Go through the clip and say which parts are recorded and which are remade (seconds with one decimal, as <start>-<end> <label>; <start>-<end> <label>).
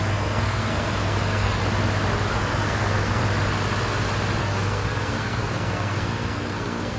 0.0-1.6 remade; 1.6-2.3 recorded; 2.3-3.2 remade; 3.2-4.4 recorded; 4.4-7.0 remade